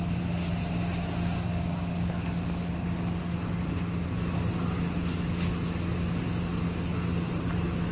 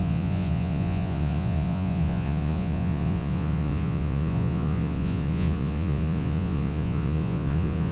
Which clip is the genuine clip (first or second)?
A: first